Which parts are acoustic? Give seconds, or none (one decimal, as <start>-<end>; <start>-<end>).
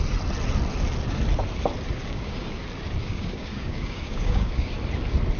0.0-2.0; 2.6-3.0; 4.7-5.4